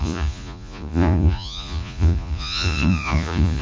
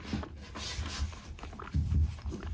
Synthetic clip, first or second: first